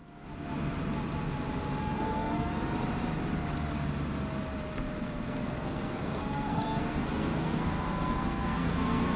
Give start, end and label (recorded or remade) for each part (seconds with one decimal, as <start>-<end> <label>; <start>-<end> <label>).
0.0-1.8 recorded; 1.8-2.5 remade; 2.5-5.0 recorded; 5.0-9.2 remade